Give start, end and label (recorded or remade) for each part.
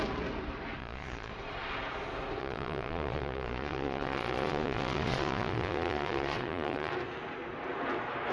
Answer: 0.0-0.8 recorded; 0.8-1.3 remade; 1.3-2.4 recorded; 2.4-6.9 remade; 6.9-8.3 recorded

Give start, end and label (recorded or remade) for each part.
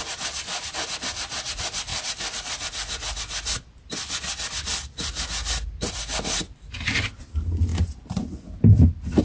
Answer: 0.0-9.2 recorded